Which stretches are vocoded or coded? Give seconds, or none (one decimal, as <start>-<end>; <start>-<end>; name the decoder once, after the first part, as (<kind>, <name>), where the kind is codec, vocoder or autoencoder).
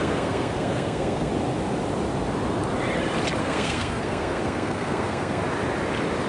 0.0-1.3 (codec, SNAC); 3.4-5.4